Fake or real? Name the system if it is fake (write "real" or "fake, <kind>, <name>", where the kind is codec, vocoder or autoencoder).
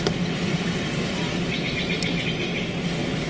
real